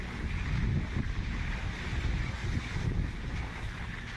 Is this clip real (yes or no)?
yes